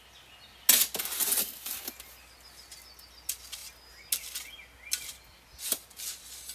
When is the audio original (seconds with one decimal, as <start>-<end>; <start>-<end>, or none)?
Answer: 0.0-6.5